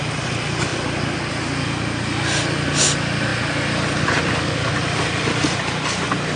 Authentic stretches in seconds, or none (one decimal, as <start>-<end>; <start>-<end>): 0.0-6.4